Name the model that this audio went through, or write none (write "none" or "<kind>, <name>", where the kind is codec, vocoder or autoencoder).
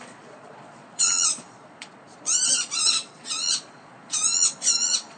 vocoder, Vocos